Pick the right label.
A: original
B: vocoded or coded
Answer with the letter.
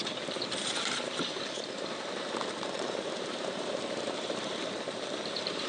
B